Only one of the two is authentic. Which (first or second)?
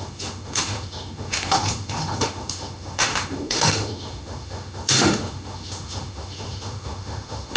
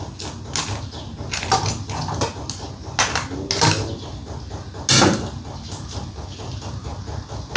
second